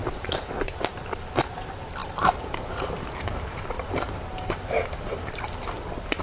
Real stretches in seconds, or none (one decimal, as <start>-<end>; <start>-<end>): 0.8-2.0; 5.4-6.2